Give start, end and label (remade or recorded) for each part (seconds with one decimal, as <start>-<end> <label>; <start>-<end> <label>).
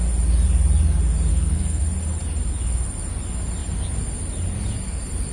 0.0-1.3 recorded; 1.3-1.8 remade; 1.8-5.3 recorded